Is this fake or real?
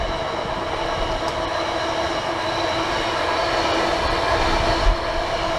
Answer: real